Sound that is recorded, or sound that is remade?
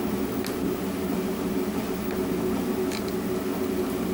recorded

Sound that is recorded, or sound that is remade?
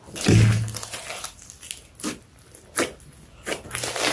recorded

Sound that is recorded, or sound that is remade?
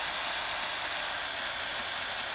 recorded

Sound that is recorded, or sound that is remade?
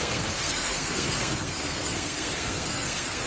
remade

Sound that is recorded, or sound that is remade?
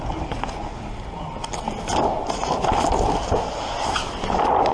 recorded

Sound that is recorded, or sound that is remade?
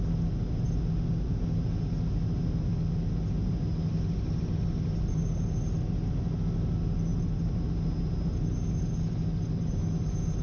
recorded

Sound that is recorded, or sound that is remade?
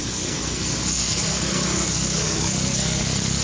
remade